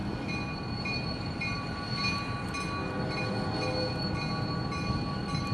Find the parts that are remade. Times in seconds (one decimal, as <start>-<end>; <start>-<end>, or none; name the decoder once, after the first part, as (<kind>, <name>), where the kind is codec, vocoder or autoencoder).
none